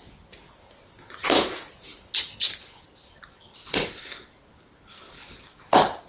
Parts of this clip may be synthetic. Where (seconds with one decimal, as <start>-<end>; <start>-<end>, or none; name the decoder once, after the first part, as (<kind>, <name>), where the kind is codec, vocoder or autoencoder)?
none